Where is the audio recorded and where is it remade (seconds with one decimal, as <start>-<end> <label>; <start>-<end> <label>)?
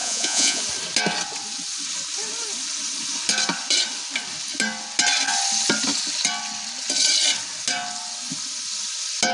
0.0-0.6 remade; 0.6-9.3 recorded